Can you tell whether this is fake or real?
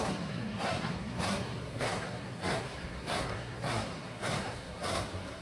fake